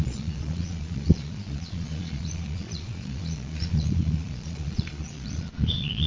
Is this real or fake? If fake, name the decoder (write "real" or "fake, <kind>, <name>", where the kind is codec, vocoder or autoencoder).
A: fake, vocoder, Vocos